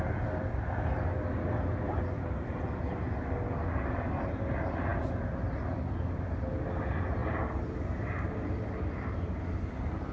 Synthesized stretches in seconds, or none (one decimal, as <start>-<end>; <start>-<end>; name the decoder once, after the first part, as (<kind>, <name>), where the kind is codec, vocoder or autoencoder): none